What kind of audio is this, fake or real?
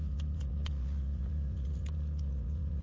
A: fake